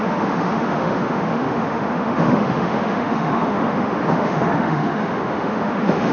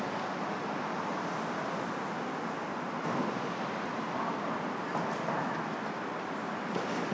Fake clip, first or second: first